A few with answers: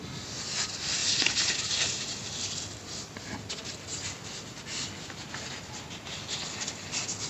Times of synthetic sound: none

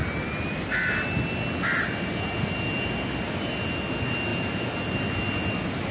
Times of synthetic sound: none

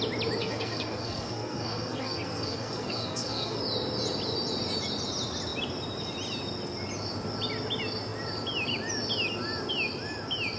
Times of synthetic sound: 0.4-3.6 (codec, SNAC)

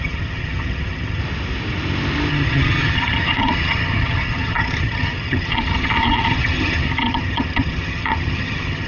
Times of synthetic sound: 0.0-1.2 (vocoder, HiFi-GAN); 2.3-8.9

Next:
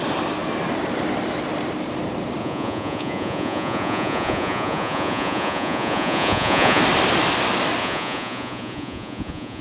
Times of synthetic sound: 2.4-6.8 (vocoder, Vocos); 7.8-9.6